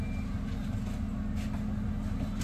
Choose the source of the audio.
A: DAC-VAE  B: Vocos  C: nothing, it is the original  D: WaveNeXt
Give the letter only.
C